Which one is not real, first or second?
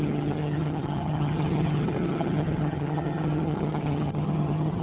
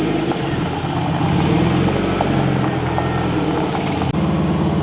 first